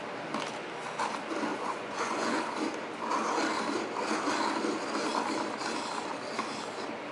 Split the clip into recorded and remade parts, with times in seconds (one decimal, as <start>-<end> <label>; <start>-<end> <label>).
0.0-1.5 recorded; 1.5-2.4 remade; 2.4-7.1 recorded

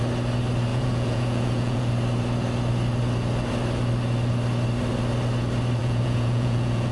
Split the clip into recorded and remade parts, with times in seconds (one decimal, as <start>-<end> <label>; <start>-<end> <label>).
0.0-0.7 recorded; 0.7-1.9 remade; 1.9-5.8 recorded; 5.8-6.9 remade

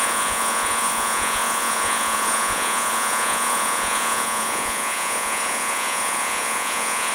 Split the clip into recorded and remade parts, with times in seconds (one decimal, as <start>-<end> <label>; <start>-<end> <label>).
0.0-7.1 remade

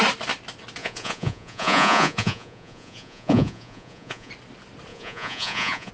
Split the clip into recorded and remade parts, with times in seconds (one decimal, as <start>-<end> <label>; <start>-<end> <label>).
0.0-0.8 recorded; 0.8-4.3 remade; 4.3-4.9 recorded; 4.9-5.9 remade

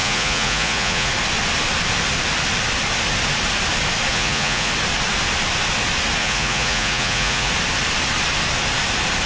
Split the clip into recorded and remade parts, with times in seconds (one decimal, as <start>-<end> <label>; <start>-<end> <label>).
0.0-1.1 remade; 1.1-4.1 recorded; 4.1-4.7 remade; 4.7-6.2 recorded; 6.2-7.5 remade; 7.5-9.3 recorded

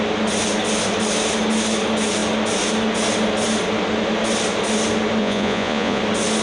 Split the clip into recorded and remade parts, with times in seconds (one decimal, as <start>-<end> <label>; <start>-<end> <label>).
0.0-5.2 recorded; 5.2-6.0 remade; 6.0-6.4 recorded